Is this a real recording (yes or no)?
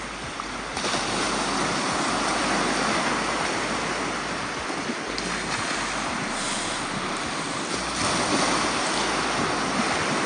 yes